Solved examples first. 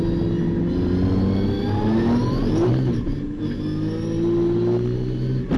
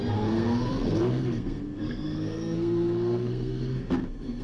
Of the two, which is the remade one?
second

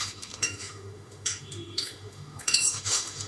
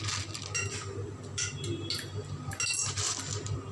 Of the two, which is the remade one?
first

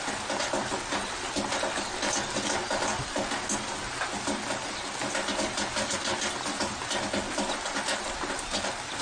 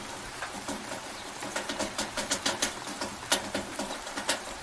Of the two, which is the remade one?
second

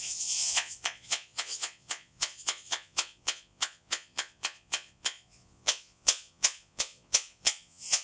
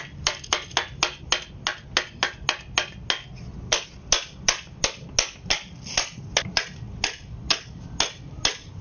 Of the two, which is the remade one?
first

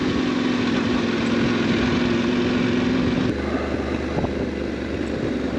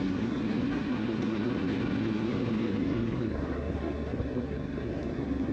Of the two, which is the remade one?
second